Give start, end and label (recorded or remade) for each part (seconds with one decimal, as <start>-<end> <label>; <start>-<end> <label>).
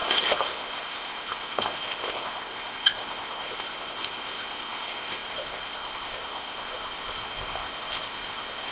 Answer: 0.0-8.7 remade